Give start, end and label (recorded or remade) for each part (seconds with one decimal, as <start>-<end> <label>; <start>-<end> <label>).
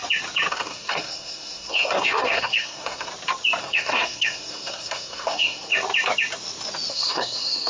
0.0-0.5 recorded; 0.5-3.1 remade; 3.1-3.6 recorded; 3.6-5.7 remade; 5.7-6.9 recorded; 6.9-7.7 remade